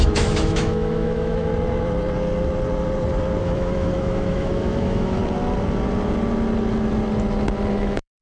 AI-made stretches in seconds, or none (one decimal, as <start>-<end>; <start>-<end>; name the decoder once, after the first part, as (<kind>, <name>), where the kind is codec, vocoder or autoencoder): 0.0-1.5 (autoencoder, DAC-VAE); 3.4-5.2; 7.7-8.2